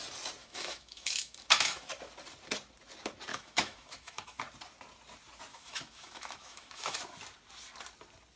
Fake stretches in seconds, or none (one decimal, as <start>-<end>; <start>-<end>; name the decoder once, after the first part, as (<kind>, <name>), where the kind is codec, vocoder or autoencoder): 0.4-1.9 (autoencoder, DAC-VAE); 3.3-4.4; 5.5-7.0